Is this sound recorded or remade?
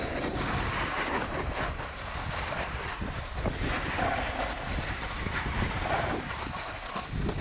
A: recorded